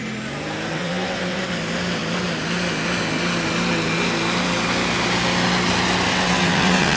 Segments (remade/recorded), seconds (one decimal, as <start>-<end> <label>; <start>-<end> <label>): 0.0-0.7 recorded; 0.7-1.4 remade; 1.4-6.1 recorded; 6.1-7.0 remade